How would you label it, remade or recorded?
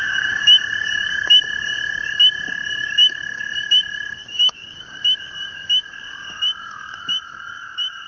remade